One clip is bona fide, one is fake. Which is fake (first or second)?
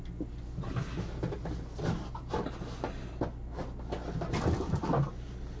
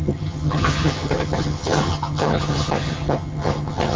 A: second